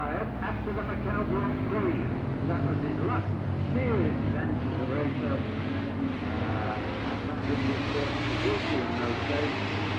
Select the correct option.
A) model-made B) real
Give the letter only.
B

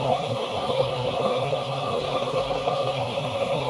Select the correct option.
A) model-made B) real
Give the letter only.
A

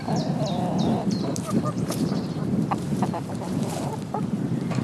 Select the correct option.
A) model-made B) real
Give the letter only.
A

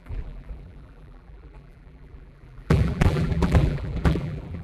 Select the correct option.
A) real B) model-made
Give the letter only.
B